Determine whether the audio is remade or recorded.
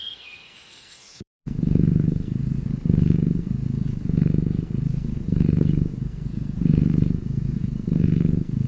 remade